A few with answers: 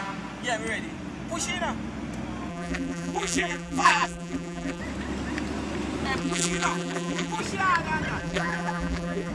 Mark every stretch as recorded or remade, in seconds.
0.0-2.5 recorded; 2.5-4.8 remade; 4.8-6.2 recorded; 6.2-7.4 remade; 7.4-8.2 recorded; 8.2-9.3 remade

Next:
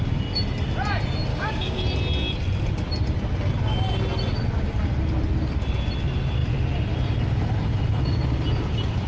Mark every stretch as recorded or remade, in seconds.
0.0-1.3 recorded; 1.3-1.8 remade; 1.8-9.1 recorded

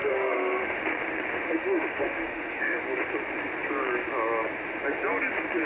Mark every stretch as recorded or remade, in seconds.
0.0-0.8 remade; 0.8-1.3 recorded; 1.3-2.8 remade; 2.8-5.7 recorded